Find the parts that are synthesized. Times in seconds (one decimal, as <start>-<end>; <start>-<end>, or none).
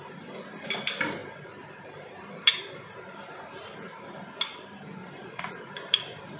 5.0-5.7